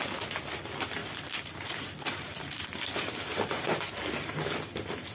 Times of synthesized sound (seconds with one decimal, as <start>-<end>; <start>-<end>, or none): 1.0-4.1